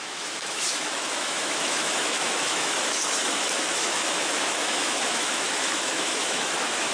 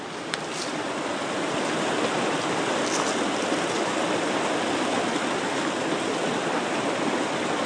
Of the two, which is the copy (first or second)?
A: first